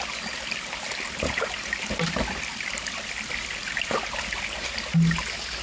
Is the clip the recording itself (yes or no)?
yes